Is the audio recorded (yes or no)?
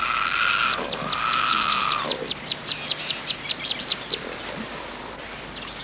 yes